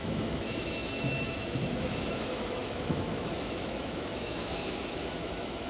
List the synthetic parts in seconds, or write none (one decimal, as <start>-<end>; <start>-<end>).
0.0-5.7